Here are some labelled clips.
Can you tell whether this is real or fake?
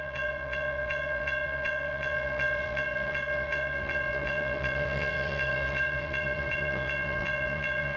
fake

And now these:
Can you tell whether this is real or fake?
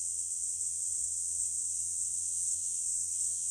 fake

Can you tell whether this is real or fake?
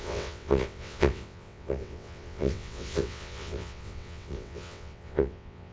fake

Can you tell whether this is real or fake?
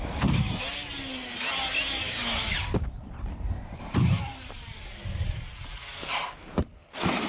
real